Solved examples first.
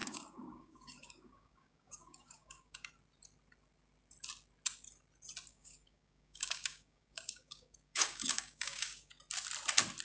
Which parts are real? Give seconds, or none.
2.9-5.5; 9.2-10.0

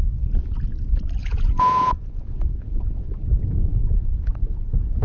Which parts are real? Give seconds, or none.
0.0-1.2; 3.1-3.7; 4.3-5.0